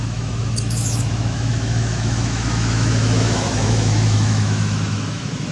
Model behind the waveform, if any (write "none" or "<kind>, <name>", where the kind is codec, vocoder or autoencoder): autoencoder, DAC-VAE